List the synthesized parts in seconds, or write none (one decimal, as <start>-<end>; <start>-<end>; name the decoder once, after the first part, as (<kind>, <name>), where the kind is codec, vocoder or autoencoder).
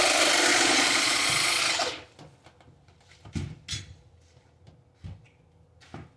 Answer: 0.5-1.6 (vocoder, Vocos)